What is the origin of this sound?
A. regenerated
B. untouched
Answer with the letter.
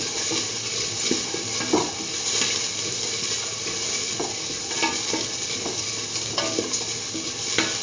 B